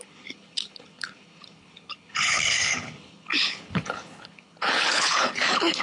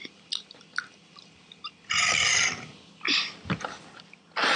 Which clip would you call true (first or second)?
second